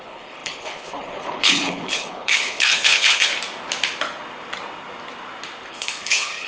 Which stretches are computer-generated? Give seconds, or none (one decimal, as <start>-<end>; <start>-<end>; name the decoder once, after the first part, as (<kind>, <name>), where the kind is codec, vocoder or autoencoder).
0.0-3.3 (codec, HILCodec); 5.7-6.5